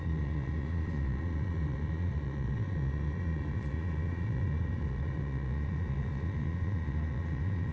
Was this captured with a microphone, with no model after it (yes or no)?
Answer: no